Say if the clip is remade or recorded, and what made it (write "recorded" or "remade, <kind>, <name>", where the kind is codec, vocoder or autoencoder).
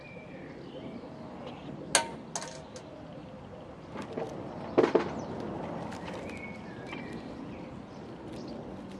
recorded